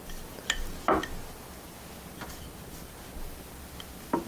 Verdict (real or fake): real